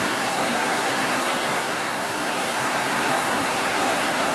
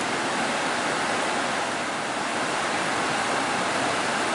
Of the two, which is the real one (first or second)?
second